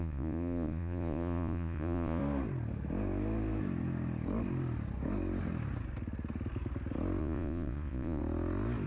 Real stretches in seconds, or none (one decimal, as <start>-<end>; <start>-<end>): 2.2-7.2; 8.2-8.9